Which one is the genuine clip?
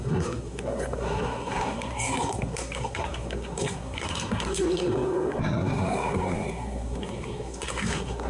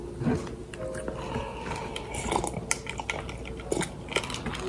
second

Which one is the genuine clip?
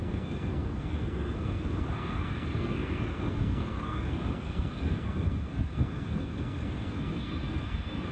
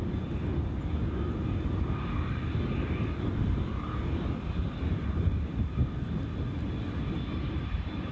second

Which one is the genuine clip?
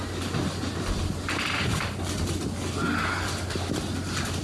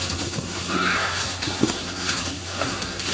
first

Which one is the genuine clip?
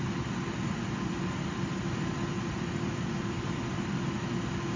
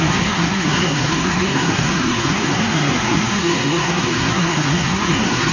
first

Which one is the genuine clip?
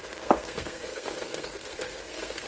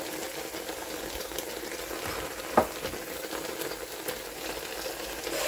second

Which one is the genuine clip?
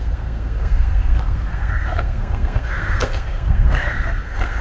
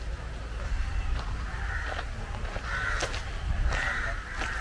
second